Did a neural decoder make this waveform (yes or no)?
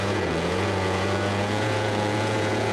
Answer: yes